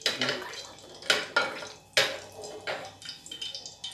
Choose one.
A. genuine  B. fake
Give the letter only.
A